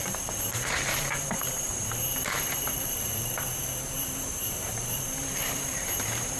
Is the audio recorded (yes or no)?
no